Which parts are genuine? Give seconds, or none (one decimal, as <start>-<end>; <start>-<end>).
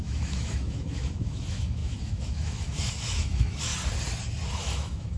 3.7-4.5